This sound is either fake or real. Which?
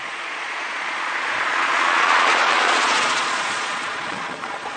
fake